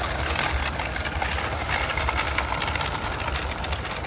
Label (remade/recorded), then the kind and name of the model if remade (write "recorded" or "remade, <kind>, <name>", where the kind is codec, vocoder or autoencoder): recorded